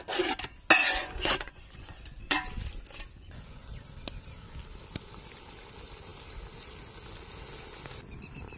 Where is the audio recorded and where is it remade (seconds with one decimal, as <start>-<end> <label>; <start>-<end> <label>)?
0.0-0.8 recorded; 0.8-2.4 remade; 2.4-3.2 recorded; 3.2-3.7 remade; 3.7-8.6 recorded